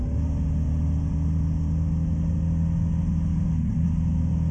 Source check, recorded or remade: recorded